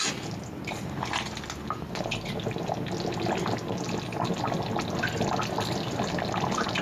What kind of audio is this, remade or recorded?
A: recorded